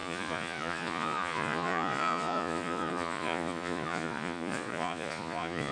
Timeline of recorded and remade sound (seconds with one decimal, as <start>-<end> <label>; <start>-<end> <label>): 0.0-5.7 remade